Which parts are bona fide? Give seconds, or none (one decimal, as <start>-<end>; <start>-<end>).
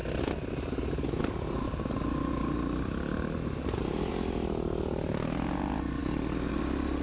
0.0-7.0